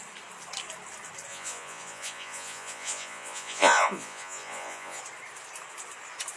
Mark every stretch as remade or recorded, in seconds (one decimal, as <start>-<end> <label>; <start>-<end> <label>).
0.0-1.3 recorded; 1.3-5.0 remade; 5.0-6.4 recorded